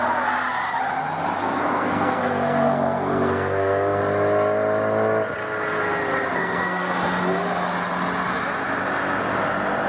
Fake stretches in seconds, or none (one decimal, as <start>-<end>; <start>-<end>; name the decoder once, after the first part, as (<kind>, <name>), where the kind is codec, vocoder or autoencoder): 1.4-4.0 (codec, SNAC); 6.3-6.9